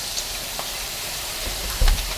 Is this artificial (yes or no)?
yes